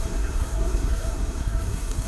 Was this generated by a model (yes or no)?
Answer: yes